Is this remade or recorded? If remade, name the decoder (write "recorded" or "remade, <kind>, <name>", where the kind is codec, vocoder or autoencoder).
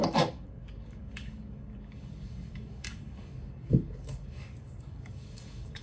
remade, codec, DAC